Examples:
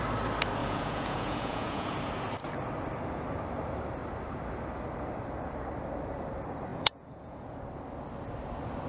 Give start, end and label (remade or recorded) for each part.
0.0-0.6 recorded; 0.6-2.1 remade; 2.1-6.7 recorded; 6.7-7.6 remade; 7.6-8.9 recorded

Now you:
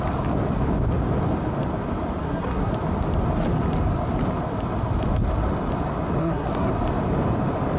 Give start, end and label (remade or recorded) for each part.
0.0-2.2 recorded; 2.2-2.7 remade; 2.7-6.2 recorded; 6.2-6.7 remade; 6.7-7.8 recorded

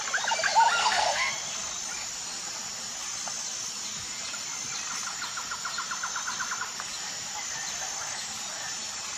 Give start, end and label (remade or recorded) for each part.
0.0-0.8 recorded; 0.8-1.3 remade; 1.3-9.2 recorded

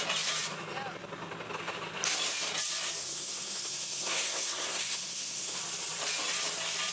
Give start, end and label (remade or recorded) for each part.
0.0-3.0 recorded; 3.0-5.6 remade; 5.6-6.9 recorded

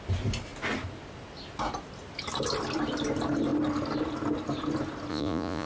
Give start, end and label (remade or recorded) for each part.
0.0-5.1 recorded; 5.1-5.7 remade

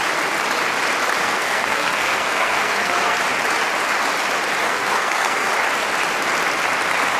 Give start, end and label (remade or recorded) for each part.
0.0-1.2 recorded; 1.2-3.2 remade; 3.2-4.6 recorded; 4.6-5.5 remade; 5.5-7.2 recorded

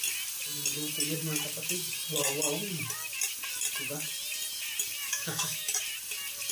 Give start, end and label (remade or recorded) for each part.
0.0-5.0 recorded; 5.0-5.7 remade; 5.7-6.5 recorded